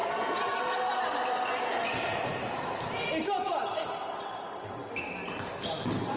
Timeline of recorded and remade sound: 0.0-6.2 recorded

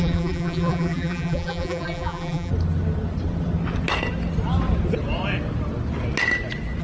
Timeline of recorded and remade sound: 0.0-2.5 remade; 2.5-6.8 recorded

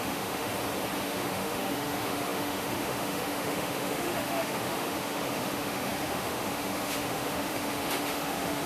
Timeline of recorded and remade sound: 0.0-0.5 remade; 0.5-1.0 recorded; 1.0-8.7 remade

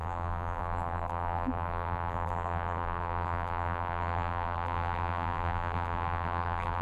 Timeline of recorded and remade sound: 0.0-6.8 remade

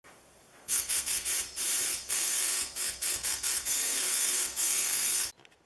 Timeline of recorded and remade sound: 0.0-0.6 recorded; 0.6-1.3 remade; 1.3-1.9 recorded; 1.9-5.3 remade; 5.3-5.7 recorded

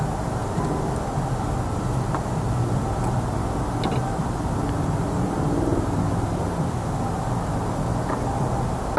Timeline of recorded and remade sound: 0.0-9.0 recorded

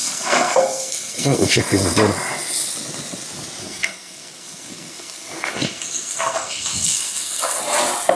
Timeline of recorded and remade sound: 0.0-1.6 remade; 1.6-3.6 recorded; 3.6-7.6 remade; 7.6-8.2 recorded

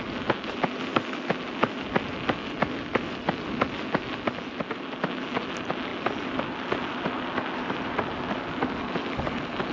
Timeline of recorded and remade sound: 0.0-9.7 recorded